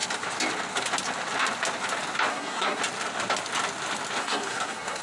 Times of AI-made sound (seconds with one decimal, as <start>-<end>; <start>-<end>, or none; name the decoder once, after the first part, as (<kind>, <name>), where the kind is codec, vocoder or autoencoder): 2.3-2.8 (codec, SNAC); 4.2-5.0